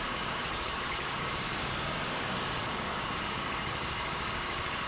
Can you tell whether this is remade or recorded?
remade